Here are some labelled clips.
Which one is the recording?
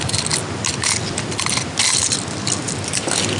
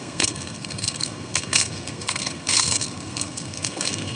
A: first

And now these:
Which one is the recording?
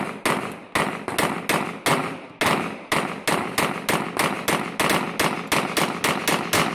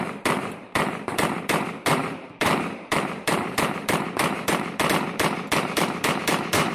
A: first